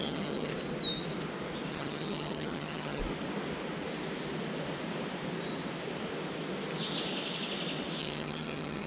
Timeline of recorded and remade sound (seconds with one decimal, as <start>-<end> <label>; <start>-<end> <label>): 0.0-0.5 remade; 0.5-1.7 recorded; 1.7-3.0 remade; 3.0-8.0 recorded; 8.0-8.9 remade